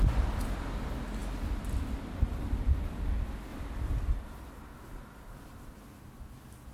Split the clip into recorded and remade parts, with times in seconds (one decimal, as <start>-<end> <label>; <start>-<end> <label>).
0.0-6.7 recorded